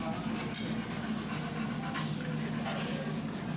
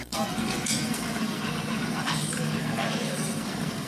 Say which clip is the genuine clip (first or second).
first